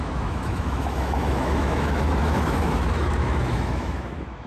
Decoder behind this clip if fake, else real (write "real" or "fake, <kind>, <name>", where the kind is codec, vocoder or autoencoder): fake, autoencoder, DAC-VAE